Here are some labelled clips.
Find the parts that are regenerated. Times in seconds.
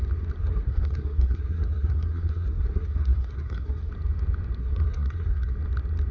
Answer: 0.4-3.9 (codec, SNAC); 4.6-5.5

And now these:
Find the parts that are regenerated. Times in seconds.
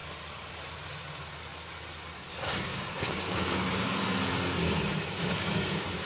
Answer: 2.7-3.9 (codec, DAC); 4.6-6.1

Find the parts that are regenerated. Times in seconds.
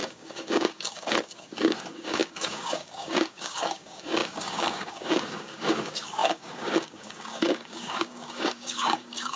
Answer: 0.0-9.4 (codec, DAC)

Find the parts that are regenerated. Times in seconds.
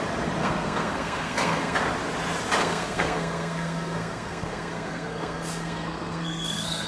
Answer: 0.4-1.8 (codec, SNAC); 2.6-6.9